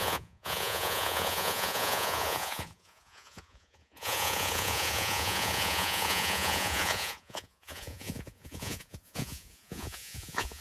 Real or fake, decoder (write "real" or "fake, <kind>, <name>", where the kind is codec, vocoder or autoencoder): fake, vocoder, Vocos